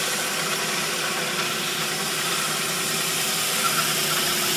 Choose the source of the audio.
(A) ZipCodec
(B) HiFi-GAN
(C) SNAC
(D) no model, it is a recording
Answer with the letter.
D